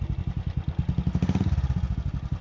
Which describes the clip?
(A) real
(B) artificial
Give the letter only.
A